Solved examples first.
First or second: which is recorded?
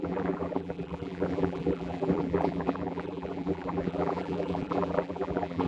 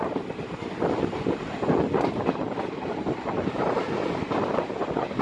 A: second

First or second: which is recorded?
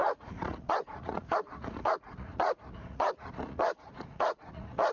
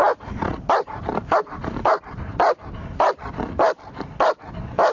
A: second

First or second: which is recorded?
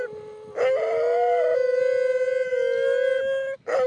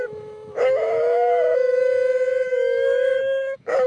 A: first